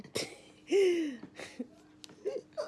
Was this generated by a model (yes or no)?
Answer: no